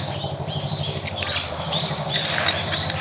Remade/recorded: remade